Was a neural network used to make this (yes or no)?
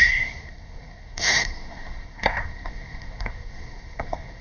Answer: yes